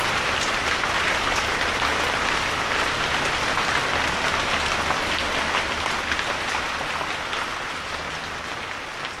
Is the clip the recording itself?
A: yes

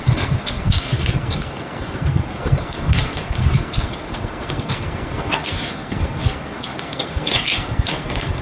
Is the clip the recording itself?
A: no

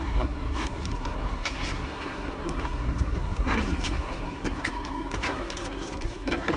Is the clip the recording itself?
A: no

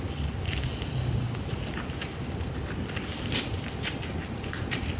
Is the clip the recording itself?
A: yes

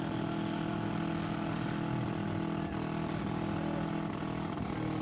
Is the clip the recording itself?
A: yes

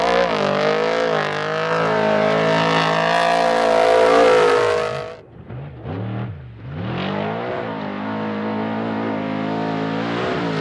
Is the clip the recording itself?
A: yes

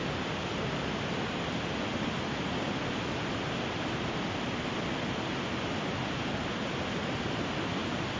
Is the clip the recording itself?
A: yes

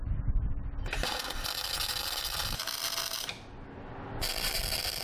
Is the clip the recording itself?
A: yes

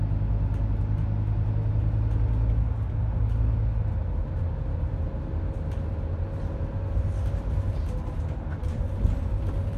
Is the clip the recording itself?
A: yes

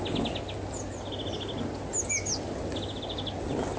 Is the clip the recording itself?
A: yes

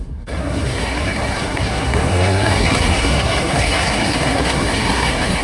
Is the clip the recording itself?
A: no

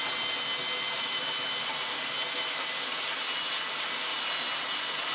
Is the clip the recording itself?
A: yes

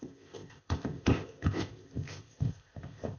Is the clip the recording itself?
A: no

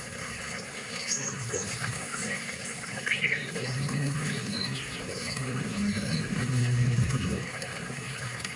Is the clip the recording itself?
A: no